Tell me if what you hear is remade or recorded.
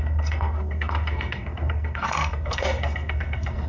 remade